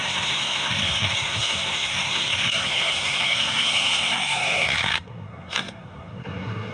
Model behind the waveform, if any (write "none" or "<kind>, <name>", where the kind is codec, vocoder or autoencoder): codec, SNAC